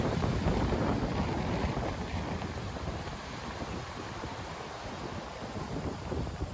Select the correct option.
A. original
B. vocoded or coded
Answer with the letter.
A